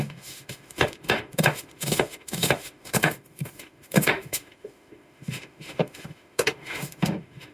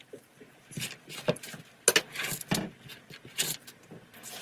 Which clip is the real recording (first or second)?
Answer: second